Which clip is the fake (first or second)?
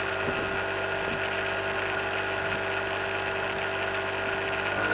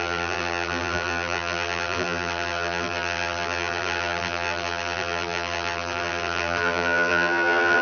second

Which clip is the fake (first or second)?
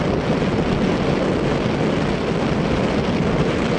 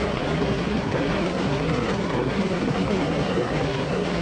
second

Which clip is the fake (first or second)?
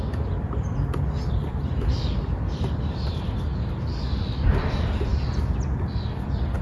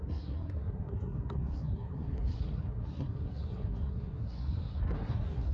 second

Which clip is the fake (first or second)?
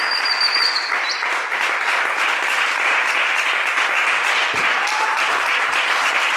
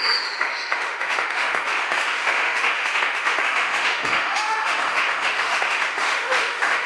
second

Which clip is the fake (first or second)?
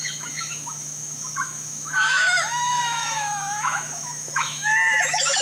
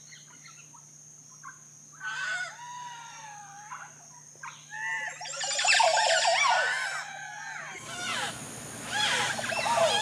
first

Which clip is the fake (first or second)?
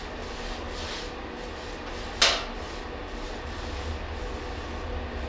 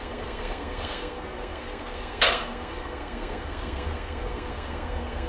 second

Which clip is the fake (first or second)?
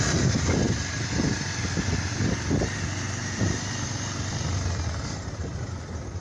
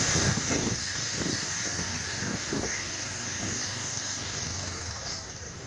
second